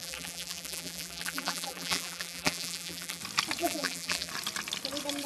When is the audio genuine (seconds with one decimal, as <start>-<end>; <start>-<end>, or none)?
3.2-3.6; 4.3-5.3